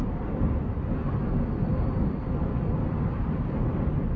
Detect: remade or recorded recorded